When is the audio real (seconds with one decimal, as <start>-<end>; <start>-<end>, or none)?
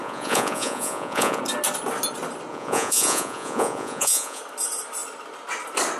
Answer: 1.4-2.5; 4.4-6.0